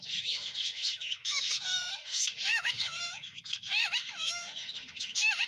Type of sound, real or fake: fake